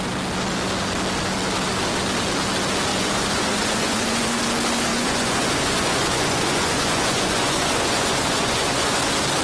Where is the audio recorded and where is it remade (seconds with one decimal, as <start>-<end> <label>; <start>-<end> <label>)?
0.0-2.9 recorded; 2.9-4.4 remade; 4.4-4.9 recorded; 4.9-9.0 remade; 9.0-9.4 recorded